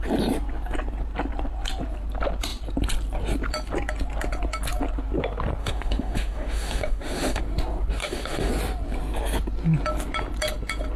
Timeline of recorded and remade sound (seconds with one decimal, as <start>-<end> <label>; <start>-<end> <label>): 0.0-5.6 recorded; 5.6-7.4 remade; 7.4-8.0 recorded; 8.0-8.5 remade; 8.5-11.0 recorded